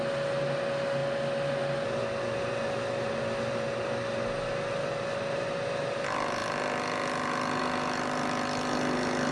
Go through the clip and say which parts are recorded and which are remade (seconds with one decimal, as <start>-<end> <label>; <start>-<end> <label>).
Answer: 0.0-9.3 recorded